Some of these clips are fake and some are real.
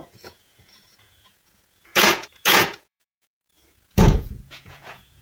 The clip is fake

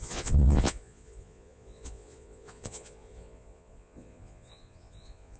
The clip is fake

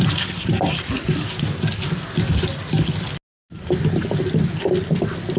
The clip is real